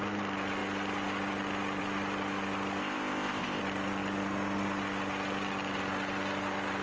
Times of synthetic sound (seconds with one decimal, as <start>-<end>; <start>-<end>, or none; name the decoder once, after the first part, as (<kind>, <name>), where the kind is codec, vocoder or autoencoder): 2.8-3.6 (codec, ZipCodec)